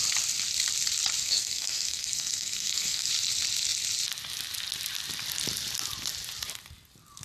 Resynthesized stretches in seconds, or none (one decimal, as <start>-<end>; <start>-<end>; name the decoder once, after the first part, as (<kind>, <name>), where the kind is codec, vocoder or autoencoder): 1.2-3.1 (codec, SNAC)